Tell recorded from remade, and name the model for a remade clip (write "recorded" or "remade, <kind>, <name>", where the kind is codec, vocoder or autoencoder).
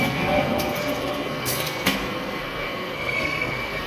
remade, codec, SNAC